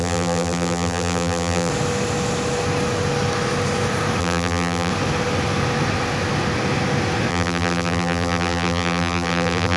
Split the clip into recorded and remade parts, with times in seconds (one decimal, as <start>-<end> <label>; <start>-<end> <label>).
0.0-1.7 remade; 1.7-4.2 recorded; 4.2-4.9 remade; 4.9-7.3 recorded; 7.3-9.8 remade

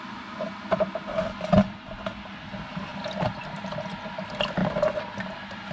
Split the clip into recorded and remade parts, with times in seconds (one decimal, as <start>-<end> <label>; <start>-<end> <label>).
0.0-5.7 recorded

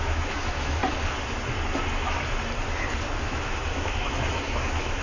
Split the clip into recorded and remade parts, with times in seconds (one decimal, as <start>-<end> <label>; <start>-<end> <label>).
0.0-0.8 remade; 0.8-3.2 recorded; 3.2-5.0 remade

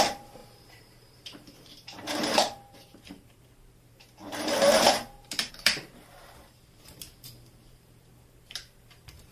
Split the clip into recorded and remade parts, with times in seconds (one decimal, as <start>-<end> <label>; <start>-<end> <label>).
0.0-9.3 remade